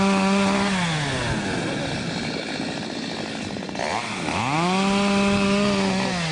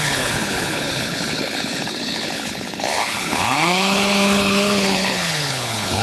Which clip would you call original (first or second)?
first